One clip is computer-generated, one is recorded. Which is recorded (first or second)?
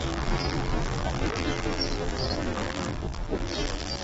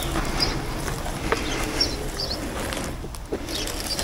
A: second